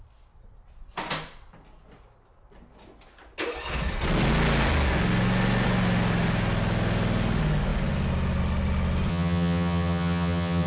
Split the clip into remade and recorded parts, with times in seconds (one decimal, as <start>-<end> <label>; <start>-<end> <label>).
0.0-9.1 recorded; 9.1-10.7 remade